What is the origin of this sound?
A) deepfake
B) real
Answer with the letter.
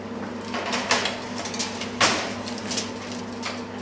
B